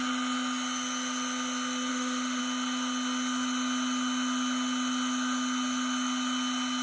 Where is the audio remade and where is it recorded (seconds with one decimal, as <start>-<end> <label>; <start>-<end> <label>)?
0.0-1.9 recorded; 1.9-2.4 remade; 2.4-6.8 recorded